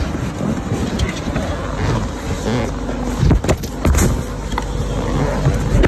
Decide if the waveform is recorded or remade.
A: recorded